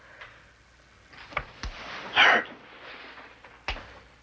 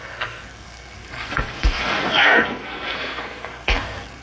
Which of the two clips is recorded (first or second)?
first